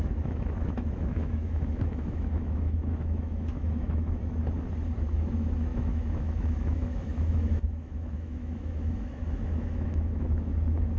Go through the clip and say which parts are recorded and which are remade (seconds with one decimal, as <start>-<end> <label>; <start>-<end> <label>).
0.0-4.4 remade; 4.4-5.0 recorded; 5.0-11.0 remade